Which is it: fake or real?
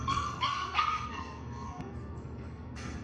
fake